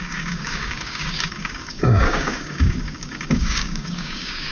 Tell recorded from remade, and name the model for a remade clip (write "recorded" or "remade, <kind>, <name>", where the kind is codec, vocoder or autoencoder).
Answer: remade, codec, DAC